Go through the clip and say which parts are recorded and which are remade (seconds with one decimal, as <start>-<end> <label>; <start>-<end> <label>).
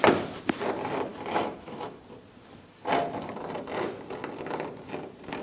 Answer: 0.0-1.1 recorded; 1.1-2.0 remade; 2.0-5.4 recorded